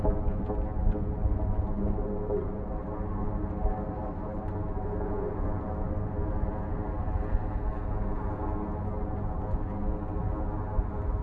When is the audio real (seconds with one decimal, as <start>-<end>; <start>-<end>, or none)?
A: 0.0-4.0; 4.5-11.2